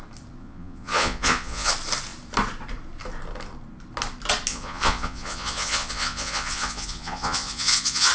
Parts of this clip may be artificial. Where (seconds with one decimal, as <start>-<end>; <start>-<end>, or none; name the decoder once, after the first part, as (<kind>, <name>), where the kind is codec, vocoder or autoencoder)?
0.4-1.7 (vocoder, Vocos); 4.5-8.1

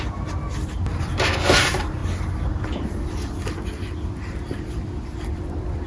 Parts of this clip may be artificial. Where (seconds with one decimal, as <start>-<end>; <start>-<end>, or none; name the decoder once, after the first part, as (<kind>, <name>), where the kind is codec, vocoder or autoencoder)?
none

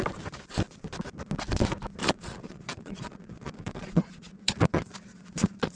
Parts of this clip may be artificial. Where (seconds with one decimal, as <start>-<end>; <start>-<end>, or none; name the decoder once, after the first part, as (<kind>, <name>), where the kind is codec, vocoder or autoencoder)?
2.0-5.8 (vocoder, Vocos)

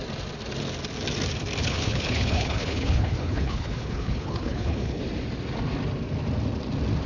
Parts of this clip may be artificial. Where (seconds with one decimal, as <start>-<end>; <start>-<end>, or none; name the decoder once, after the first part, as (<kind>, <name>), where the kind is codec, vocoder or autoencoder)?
1.6-5.0 (codec, HILCodec)

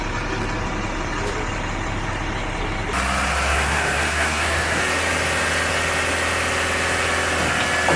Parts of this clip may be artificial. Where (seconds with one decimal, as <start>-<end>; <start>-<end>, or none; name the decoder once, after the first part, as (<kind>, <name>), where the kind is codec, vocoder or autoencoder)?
3.5-4.8 (codec, SNAC)

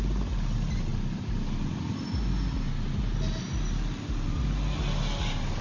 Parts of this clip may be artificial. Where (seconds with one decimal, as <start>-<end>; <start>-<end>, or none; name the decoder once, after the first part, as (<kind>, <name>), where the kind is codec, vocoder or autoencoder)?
none